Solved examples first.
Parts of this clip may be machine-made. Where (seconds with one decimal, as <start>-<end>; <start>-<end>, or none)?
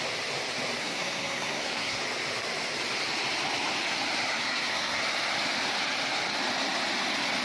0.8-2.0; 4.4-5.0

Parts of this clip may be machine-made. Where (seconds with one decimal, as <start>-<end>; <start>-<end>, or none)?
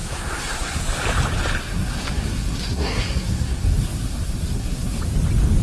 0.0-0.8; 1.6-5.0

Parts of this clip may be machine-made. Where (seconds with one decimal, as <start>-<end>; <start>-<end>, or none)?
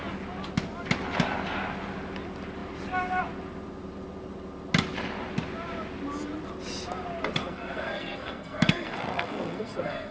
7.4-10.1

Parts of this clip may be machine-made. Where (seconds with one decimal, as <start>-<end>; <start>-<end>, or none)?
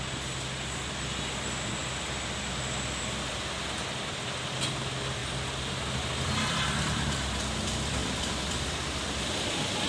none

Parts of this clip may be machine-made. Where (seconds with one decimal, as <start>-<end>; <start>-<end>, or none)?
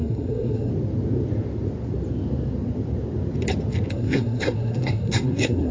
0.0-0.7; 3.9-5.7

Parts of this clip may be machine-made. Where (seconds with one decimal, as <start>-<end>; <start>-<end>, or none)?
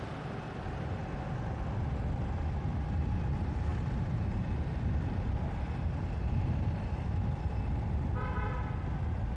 none